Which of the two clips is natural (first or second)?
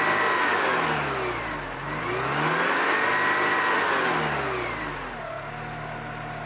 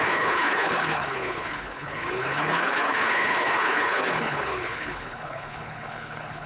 first